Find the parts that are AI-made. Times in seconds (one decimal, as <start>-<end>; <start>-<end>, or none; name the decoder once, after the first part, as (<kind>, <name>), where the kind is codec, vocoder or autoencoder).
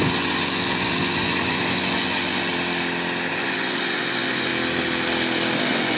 0.0-2.5 (vocoder, Vocos); 3.3-4.5; 5.6-6.0